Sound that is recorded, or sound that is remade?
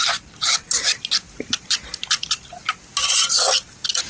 recorded